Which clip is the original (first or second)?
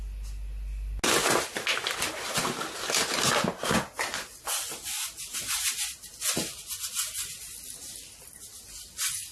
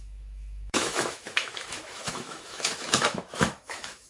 first